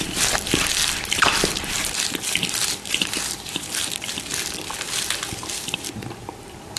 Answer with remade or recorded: remade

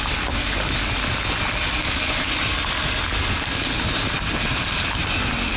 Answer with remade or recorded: recorded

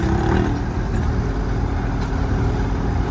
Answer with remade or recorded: recorded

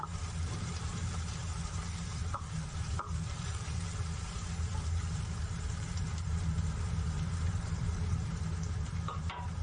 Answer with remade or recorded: remade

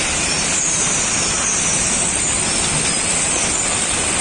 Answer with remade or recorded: recorded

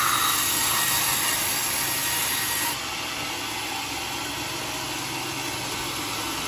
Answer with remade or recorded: recorded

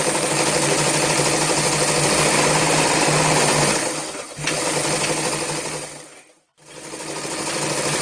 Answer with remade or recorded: recorded